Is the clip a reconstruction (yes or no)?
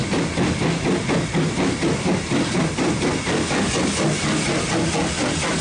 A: no